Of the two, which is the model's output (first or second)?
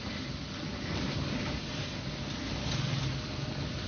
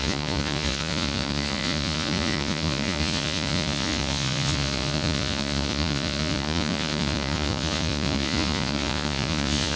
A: second